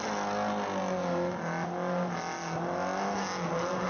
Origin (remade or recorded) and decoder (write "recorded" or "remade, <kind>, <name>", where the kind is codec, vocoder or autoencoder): recorded